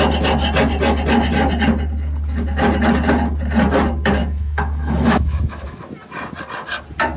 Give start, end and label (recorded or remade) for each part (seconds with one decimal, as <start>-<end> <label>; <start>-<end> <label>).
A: 0.0-4.2 recorded; 4.2-5.8 remade; 5.8-7.2 recorded